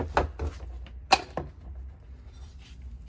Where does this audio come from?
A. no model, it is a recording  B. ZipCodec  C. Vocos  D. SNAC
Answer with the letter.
A